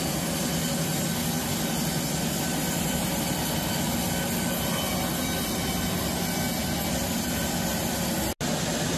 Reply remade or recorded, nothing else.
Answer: recorded